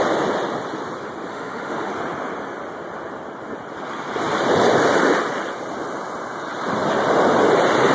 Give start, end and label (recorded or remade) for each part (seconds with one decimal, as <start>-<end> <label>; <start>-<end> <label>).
0.0-1.3 recorded; 1.3-1.9 remade; 1.9-7.9 recorded